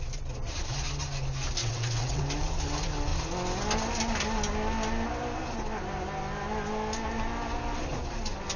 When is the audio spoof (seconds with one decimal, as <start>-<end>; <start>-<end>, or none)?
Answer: 1.6-2.2